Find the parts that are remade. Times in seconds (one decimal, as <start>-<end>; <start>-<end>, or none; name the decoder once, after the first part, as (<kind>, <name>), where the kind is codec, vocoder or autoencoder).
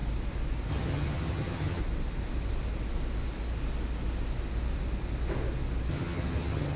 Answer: 0.7-1.8 (vocoder, HiFi-GAN); 5.9-6.8